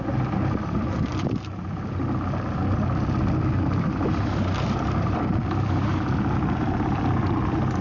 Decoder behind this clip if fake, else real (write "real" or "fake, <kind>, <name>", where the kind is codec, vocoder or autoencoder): real